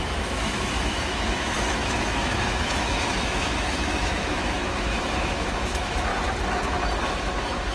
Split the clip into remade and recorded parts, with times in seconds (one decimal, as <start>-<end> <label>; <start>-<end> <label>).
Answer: 0.0-6.1 remade; 6.1-7.0 recorded; 7.0-7.7 remade